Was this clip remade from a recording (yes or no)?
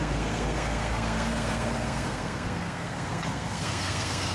yes